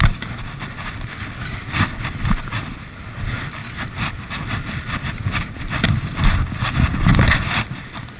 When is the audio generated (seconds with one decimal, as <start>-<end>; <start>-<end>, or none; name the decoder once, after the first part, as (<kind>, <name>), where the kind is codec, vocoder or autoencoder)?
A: none